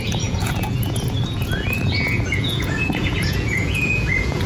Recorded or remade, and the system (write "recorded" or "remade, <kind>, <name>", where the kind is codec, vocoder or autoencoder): remade, vocoder, Vocos